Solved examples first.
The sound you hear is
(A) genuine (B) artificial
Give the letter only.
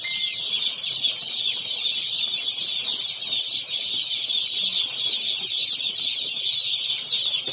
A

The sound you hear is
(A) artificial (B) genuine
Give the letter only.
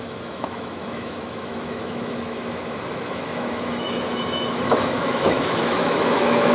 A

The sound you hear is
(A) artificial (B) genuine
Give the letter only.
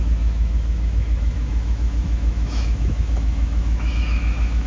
A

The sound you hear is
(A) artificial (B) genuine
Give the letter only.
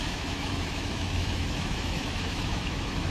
A